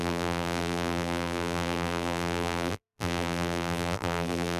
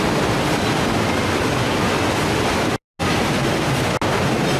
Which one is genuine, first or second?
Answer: second